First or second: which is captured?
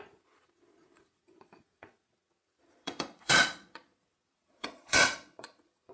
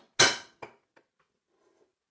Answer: second